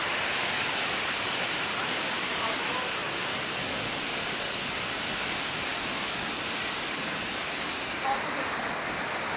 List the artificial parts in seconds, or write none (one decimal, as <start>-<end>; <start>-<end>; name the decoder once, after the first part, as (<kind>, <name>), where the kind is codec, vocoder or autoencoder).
none